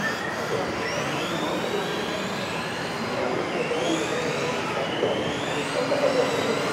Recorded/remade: recorded